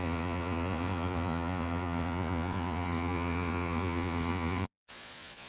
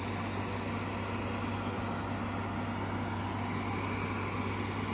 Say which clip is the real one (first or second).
second